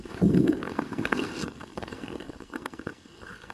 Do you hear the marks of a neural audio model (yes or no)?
yes